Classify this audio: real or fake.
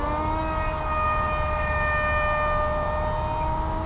real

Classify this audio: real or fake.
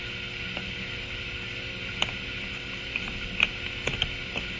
real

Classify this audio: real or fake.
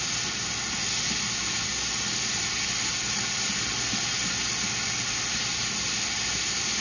real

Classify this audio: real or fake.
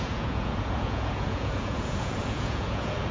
fake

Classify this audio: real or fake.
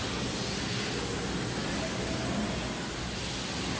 real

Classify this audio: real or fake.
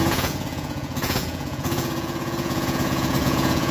fake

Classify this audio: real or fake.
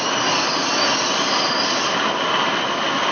real